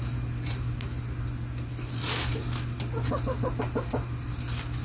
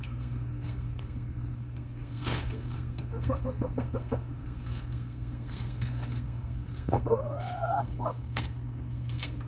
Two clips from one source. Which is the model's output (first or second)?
second